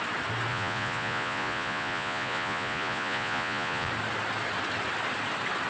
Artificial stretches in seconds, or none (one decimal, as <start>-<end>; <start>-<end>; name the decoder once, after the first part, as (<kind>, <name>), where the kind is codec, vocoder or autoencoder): 0.5-3.9 (vocoder, Vocos)